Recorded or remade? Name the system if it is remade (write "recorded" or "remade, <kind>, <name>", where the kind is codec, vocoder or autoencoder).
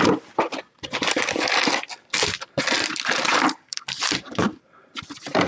recorded